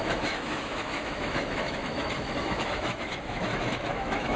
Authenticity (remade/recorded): remade